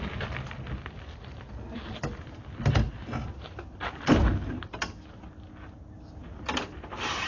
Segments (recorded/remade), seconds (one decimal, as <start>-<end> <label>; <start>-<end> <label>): 0.0-7.3 recorded